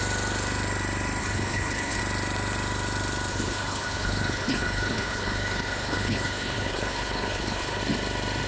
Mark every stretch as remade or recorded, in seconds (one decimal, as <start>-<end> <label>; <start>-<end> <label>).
0.0-1.2 recorded; 1.2-2.0 remade; 2.0-3.3 recorded; 3.3-7.8 remade; 7.8-8.5 recorded